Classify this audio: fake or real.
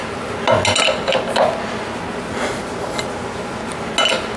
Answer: real